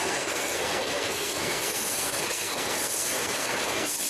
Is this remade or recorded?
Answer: remade